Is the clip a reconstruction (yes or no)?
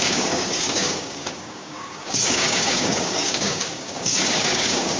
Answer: yes